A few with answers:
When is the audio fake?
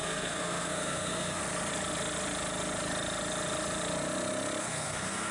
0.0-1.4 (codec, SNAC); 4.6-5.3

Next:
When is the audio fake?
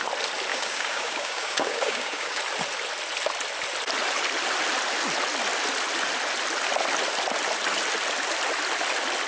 0.5-2.4 (codec, DAC)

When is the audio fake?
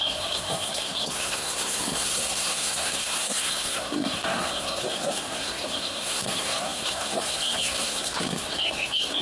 0.0-9.2 (codec, SNAC)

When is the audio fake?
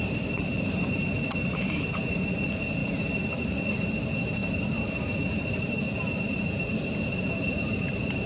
0.0-8.3 (vocoder, BigVGAN v2)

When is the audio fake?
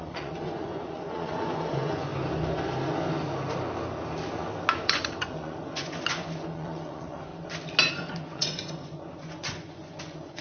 0.0-2.1 (vocoder, Vocos); 4.8-7.3; 7.9-10.4